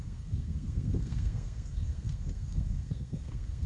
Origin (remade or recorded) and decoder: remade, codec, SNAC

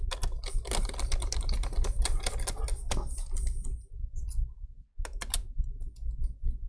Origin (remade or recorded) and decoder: recorded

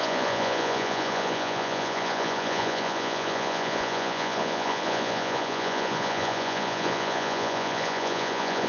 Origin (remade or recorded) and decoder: remade, vocoder, Vocos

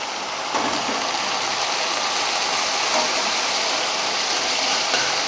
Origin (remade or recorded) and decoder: recorded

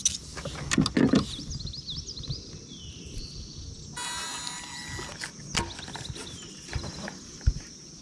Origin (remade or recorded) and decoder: recorded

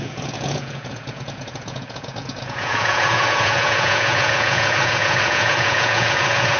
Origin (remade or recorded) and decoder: remade, vocoder, Vocos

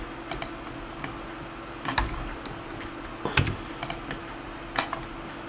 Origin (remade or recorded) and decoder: recorded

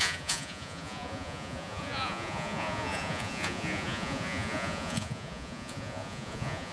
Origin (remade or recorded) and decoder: remade, vocoder, Vocos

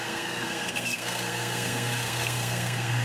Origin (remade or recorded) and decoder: remade, codec, SNAC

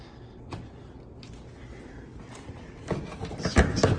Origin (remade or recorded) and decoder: recorded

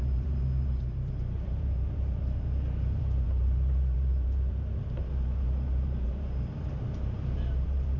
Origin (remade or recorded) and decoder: remade, vocoder, BigVGAN v2